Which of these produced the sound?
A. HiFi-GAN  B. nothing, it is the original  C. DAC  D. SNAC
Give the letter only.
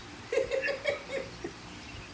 B